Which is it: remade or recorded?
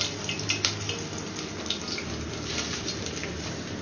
recorded